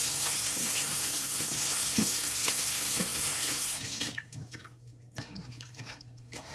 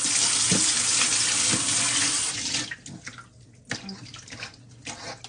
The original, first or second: second